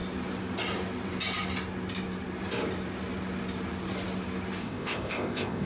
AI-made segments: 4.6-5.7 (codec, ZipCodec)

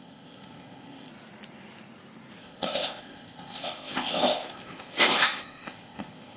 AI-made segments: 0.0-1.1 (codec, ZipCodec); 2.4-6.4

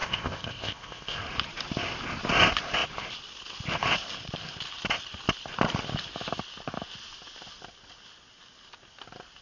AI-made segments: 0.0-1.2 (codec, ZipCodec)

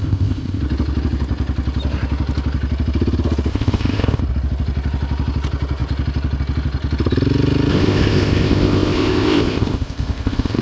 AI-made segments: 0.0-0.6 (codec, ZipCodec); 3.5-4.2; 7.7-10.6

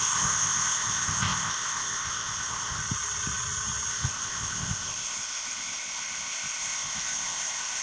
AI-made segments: 0.0-2.8 (codec, ZipCodec); 3.9-7.8

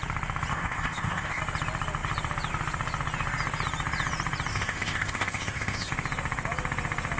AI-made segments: 0.5-1.4 (codec, ZipCodec); 4.5-5.9

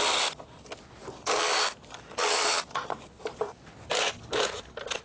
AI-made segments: none